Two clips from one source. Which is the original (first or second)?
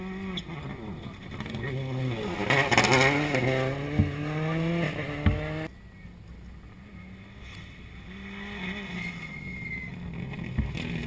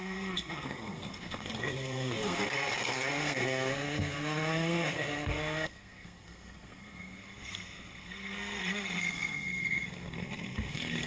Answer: first